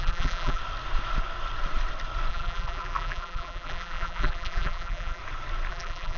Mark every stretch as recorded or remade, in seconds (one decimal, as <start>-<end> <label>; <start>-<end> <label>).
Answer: 0.0-0.6 remade; 0.6-2.3 recorded; 2.3-5.2 remade; 5.2-5.7 recorded; 5.7-6.2 remade